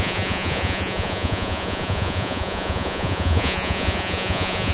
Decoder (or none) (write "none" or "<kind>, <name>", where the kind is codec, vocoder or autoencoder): vocoder, Vocos